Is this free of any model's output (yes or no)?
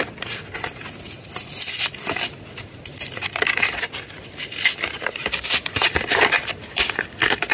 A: yes